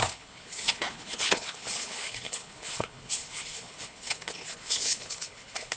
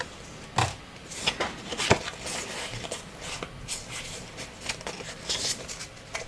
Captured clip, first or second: second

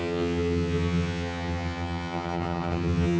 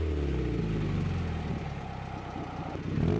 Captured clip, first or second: second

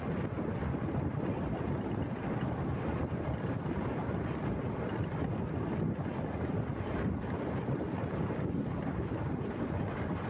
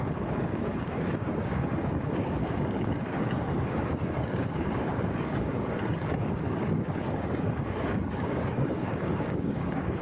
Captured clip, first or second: first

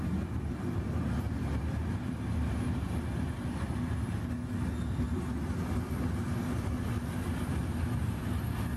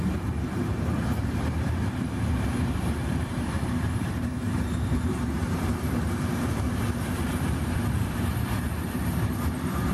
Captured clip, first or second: first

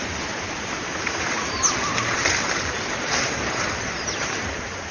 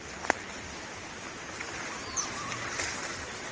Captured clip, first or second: second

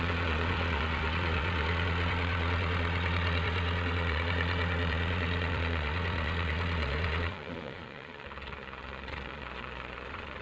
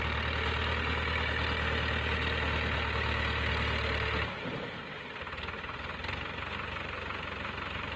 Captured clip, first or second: second